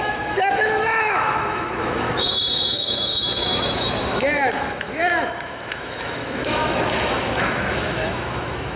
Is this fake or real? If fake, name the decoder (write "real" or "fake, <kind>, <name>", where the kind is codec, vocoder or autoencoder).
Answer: fake, autoencoder, DAC-VAE